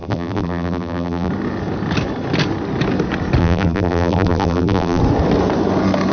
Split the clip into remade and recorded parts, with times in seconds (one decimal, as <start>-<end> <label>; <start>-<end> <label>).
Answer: 0.0-1.3 remade; 1.3-3.4 recorded; 3.4-5.0 remade; 5.0-6.1 recorded